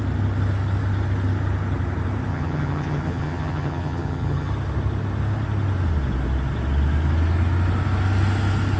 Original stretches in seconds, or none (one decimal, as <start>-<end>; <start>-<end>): 0.0-2.3; 4.5-8.8